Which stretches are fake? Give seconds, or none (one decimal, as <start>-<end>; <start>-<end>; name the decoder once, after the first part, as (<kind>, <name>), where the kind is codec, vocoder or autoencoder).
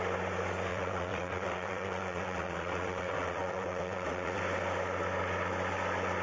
0.7-4.4 (vocoder, WaveNeXt)